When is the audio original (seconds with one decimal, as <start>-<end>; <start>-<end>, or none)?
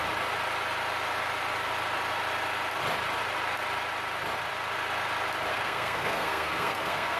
0.0-5.5